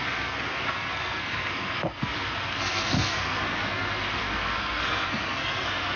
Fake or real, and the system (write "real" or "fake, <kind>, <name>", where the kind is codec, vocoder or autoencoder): fake, codec, SNAC